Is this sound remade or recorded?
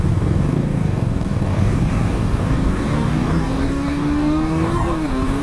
remade